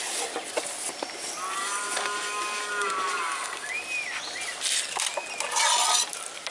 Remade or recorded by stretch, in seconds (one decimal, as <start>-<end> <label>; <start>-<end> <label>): 0.0-1.6 recorded; 1.6-3.7 remade; 3.7-6.5 recorded